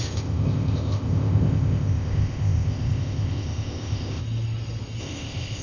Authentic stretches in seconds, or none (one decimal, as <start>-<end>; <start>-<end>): 4.2-5.0